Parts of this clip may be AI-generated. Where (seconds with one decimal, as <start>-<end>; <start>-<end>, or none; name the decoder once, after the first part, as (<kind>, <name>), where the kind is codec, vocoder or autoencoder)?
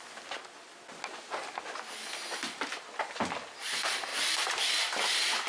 4.1-4.6 (vocoder, BigVGAN v2)